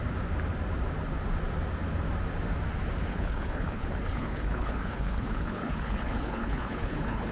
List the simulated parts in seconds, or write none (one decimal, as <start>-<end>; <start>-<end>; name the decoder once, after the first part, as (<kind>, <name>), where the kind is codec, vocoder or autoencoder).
3.1-7.3 (codec, HILCodec)